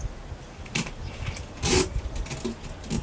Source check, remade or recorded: recorded